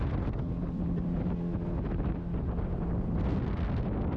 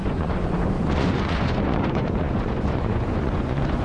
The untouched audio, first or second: first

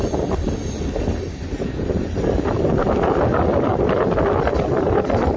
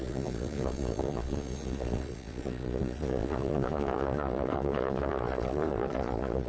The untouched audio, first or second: first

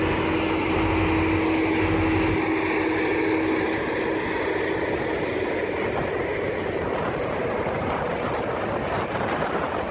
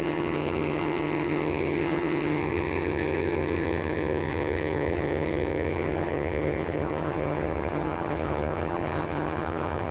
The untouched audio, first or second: first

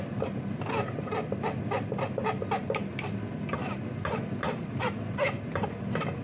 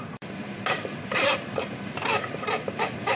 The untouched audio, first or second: first